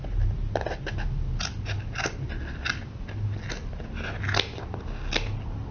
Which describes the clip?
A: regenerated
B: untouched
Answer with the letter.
B